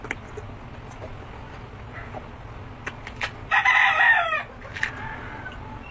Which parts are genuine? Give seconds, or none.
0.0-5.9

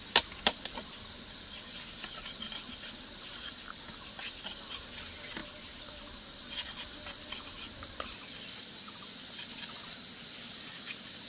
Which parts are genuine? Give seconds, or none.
0.0-11.3

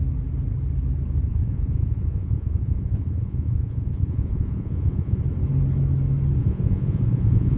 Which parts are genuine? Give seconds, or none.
0.0-1.3; 5.2-6.4

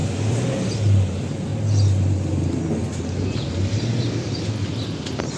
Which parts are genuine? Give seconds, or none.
0.0-5.4

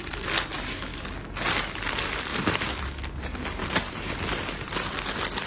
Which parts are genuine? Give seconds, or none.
0.0-2.3; 2.8-3.6; 4.3-5.5

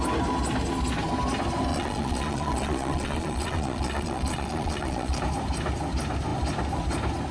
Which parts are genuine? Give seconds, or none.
0.0-1.7; 5.2-7.3